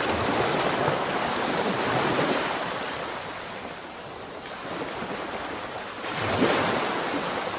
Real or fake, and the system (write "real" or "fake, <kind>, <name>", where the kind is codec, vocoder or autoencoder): real